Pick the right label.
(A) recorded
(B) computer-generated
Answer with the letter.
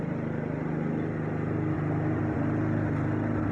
A